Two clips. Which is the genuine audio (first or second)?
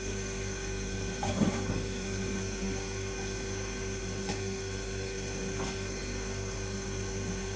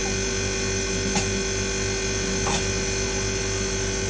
second